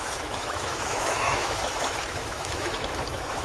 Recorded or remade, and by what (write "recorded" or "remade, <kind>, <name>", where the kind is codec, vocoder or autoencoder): remade, autoencoder, DAC-VAE